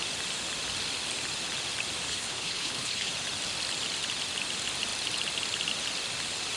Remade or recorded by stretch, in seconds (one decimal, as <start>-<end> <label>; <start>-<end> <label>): 0.0-2.1 recorded; 2.1-3.1 remade; 3.1-6.6 recorded